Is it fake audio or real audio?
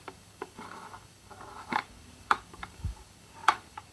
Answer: fake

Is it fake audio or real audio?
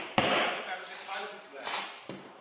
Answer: fake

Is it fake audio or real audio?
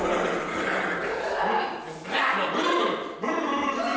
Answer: real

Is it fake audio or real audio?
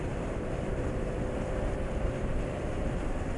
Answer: fake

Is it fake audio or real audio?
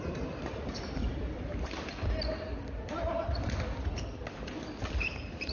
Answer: fake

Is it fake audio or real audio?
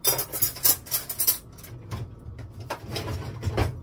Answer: real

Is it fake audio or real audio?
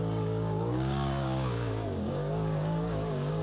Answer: fake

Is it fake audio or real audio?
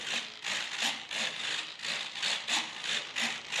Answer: real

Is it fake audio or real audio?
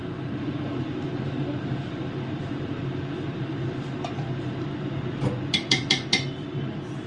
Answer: fake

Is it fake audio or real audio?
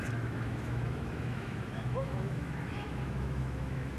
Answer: fake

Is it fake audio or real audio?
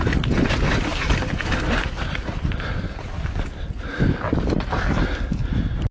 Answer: real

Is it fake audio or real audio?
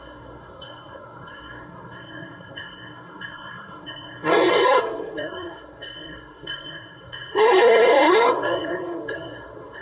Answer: fake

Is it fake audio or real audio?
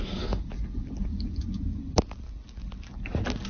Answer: real